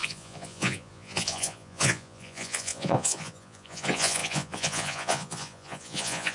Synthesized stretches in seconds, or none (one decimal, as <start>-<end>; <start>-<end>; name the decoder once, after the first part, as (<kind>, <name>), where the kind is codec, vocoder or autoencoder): 0.0-6.3 (vocoder, Vocos)